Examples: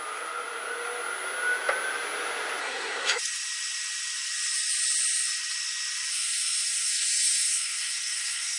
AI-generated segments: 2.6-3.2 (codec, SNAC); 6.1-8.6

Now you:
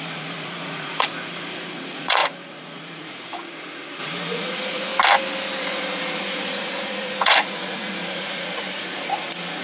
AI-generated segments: 0.0-4.9 (vocoder, Vocos); 5.6-9.6

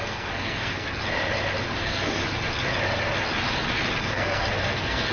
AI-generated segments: 0.0-1.0 (codec, SNAC); 1.8-2.2; 4.0-5.1

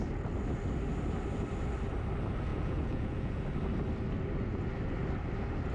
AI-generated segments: 2.5-3.4 (vocoder, Vocos)

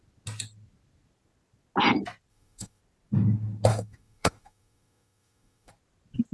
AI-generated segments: 2.3-2.8 (autoencoder, DAC-VAE); 3.7-5.7

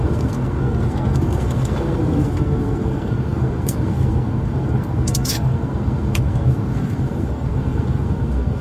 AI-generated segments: 0.0-8.6 (codec, SNAC)

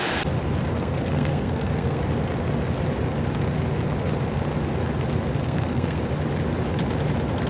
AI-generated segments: 0.7-2.0 (codec, SNAC); 5.4-6.0

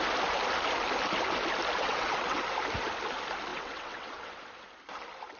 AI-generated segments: 1.8-2.4 (vocoder, WaveNeXt); 3.5-4.4